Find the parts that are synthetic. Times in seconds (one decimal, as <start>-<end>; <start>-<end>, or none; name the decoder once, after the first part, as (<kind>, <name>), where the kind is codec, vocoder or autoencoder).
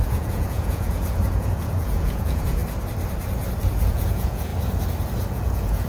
0.0-2.6 (vocoder, Vocos); 3.6-4.5; 5.3-5.9